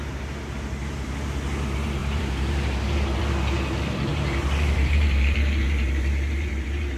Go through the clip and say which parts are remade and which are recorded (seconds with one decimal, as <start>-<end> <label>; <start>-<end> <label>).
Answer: 0.0-2.0 recorded; 2.0-3.2 remade; 3.2-4.1 recorded; 4.1-7.0 remade